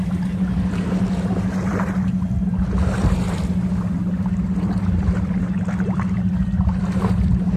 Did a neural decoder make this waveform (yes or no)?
no